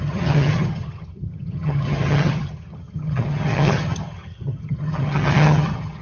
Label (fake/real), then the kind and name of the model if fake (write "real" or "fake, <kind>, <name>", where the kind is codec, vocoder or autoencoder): fake, vocoder, HiFi-GAN